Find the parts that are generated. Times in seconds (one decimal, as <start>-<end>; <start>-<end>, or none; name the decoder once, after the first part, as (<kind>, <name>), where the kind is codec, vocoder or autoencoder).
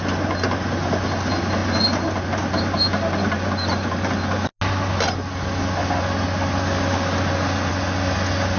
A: none